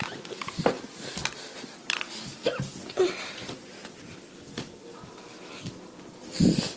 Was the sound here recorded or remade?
recorded